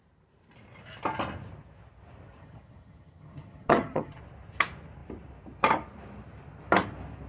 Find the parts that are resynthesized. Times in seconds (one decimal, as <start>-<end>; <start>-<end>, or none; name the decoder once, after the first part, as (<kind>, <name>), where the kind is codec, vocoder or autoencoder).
2.4-4.2 (vocoder, HiFi-GAN)